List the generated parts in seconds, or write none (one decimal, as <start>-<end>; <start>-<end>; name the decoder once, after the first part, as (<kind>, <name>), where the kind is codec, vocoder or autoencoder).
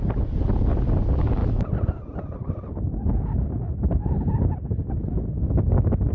none